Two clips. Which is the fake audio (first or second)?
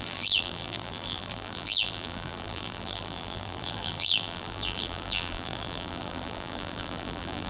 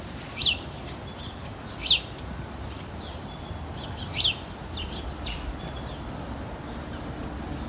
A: first